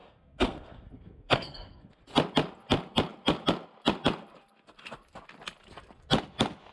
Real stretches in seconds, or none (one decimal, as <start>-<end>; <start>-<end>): 2.0-6.7

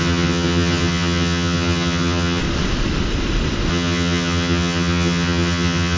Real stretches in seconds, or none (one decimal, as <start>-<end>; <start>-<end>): 2.4-3.7